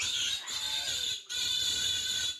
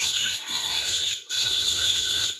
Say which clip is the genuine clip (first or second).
first